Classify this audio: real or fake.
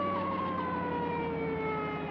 real